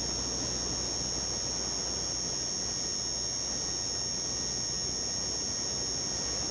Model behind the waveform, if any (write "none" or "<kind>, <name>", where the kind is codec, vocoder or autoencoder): none